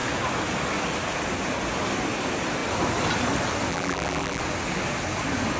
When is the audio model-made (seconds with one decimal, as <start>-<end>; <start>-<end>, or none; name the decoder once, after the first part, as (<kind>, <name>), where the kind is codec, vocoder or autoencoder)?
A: 3.7-4.4 (vocoder, BigVGAN v2)